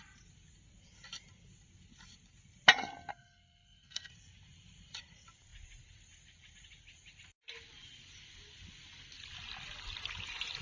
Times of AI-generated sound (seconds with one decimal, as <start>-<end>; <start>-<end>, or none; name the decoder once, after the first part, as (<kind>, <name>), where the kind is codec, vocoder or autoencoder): 3.1-4.1 (codec, SNAC)